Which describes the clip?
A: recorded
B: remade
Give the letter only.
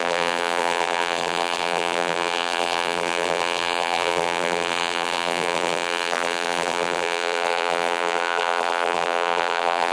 B